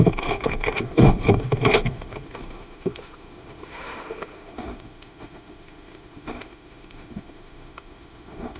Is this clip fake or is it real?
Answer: fake